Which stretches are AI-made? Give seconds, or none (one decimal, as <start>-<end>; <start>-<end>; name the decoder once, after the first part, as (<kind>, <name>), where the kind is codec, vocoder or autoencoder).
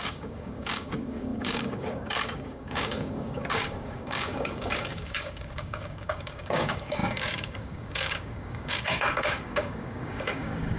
0.0-10.8 (codec, DAC)